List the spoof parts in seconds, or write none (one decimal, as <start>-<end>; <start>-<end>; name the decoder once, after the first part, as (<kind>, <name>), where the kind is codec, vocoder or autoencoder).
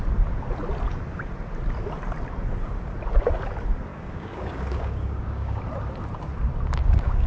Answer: 3.9-5.6 (codec, DAC); 6.8-7.3